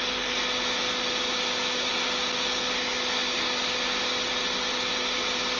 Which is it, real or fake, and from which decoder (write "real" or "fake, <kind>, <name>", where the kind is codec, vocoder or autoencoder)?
real